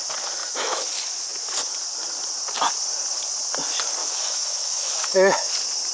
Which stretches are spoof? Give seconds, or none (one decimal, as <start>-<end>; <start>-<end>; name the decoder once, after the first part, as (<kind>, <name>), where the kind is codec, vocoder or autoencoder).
0.4-0.9 (autoencoder, DAC-VAE); 4.0-5.5

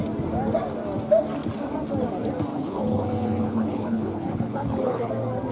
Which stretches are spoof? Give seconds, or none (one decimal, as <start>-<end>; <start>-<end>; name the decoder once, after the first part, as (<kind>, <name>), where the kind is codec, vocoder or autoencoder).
2.5-5.1 (codec, HILCodec)